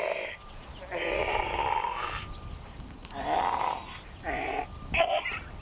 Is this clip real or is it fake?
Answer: real